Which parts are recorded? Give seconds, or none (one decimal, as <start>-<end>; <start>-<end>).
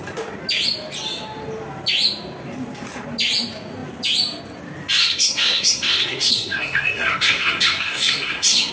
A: 0.0-5.0